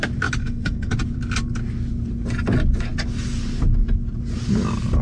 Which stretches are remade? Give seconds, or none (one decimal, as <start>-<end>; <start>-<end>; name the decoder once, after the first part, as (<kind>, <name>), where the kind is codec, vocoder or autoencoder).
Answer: 0.4-0.9 (codec, SNAC)